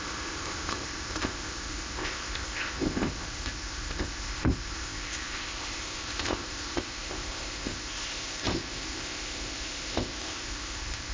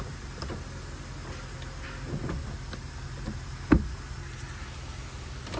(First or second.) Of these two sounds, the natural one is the second